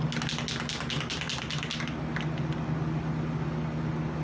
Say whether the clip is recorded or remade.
recorded